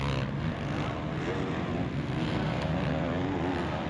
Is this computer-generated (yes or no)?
no